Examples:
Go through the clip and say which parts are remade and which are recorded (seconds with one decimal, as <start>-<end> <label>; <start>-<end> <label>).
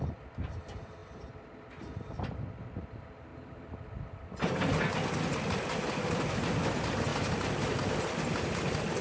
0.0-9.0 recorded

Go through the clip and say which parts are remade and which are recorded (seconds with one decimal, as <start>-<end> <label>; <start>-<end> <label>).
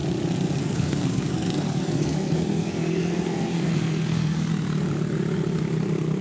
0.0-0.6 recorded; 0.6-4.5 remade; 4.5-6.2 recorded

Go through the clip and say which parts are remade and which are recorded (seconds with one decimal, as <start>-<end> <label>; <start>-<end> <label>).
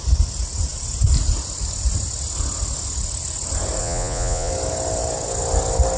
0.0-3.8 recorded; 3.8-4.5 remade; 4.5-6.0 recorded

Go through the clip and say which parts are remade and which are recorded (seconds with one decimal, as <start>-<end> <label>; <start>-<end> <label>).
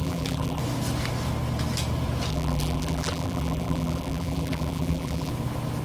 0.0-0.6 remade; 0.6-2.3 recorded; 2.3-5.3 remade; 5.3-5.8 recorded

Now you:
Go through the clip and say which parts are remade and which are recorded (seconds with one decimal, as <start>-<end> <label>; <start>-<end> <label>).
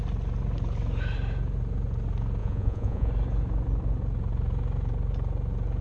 0.0-2.4 recorded; 2.4-3.1 remade; 3.1-5.8 recorded